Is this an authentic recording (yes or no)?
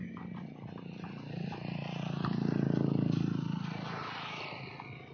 yes